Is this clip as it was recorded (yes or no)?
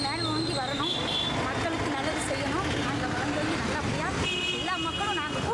yes